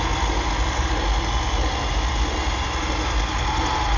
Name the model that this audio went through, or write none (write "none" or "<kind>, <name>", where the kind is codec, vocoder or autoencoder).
none